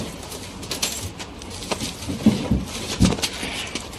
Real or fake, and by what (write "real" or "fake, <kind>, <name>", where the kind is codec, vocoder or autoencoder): real